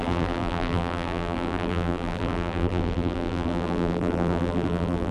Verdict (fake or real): fake